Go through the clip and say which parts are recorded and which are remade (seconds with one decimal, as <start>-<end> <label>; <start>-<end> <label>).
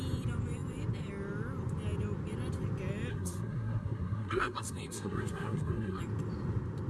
0.0-3.1 recorded; 3.1-6.0 remade; 6.0-6.9 recorded